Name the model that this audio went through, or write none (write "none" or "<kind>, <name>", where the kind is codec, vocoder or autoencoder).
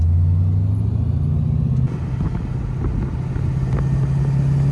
none